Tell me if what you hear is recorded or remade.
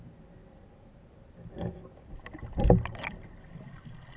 recorded